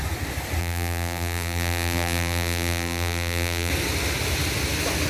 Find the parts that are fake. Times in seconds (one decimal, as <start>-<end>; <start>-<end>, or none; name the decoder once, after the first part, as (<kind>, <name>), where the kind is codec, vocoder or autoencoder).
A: 0.6-3.7 (vocoder, BigVGAN v2)